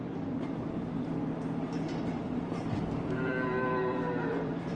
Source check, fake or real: fake